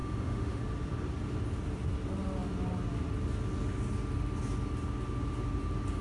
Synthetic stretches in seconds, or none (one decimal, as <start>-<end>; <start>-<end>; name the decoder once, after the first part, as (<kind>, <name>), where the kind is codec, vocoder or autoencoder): 0.0-0.6 (autoencoder, DAC-VAE)